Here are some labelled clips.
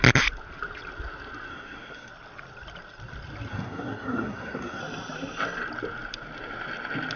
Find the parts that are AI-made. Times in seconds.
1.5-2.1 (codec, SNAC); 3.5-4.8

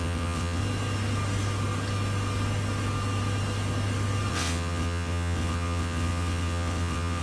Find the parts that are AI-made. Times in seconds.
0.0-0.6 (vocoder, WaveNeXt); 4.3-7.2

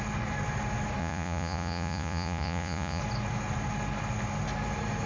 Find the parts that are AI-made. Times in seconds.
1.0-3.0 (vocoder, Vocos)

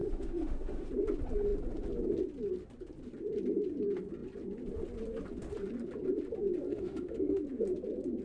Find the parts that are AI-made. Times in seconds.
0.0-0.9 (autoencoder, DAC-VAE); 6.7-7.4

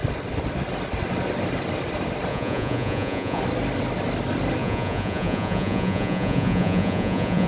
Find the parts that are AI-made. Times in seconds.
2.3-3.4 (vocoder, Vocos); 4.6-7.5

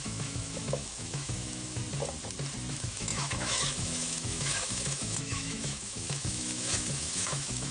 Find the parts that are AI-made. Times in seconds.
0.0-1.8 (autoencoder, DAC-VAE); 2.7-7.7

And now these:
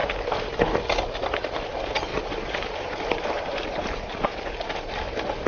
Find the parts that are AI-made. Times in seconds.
1.3-3.8 (vocoder, BigVGAN v2); 4.5-5.5

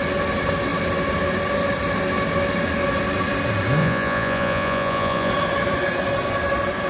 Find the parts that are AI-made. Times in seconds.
3.8-5.3 (vocoder, Vocos)